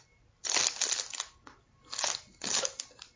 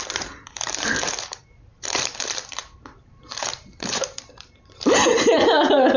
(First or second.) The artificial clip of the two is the second